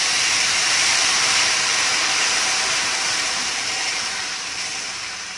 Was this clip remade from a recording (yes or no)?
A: yes